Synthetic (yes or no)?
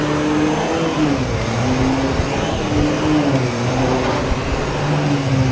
no